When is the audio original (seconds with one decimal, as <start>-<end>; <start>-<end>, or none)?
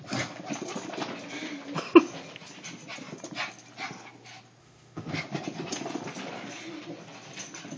0.0-4.6; 5.1-7.8